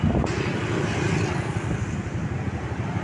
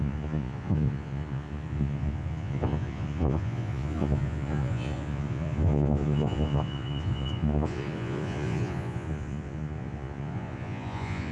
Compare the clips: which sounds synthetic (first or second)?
second